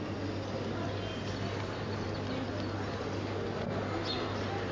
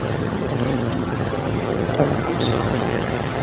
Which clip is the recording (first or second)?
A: first